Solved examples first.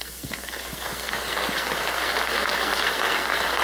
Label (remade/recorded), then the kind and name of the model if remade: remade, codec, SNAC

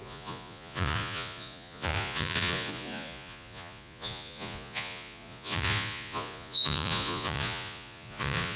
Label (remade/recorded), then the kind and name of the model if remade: remade, vocoder, Vocos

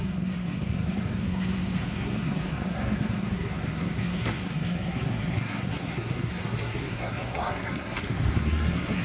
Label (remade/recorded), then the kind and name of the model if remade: remade, codec, SNAC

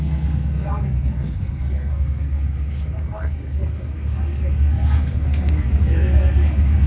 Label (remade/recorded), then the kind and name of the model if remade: remade, codec, SNAC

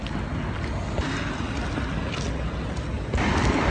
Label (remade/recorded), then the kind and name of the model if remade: recorded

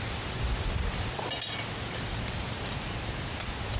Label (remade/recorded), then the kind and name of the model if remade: recorded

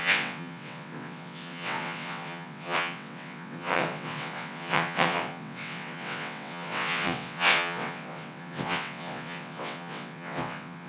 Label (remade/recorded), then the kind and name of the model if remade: remade, vocoder, WaveNeXt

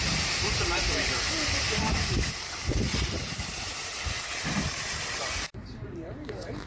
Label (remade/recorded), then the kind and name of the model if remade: remade, vocoder, BigVGAN v2